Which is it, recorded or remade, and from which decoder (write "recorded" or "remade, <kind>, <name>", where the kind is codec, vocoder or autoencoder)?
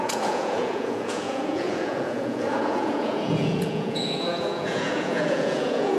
remade, vocoder, Vocos